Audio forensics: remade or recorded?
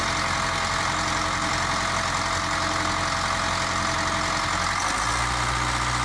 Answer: recorded